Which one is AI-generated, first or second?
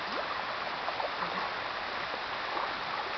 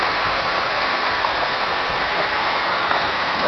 second